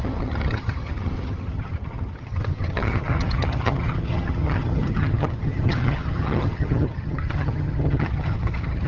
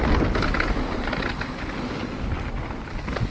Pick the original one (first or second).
second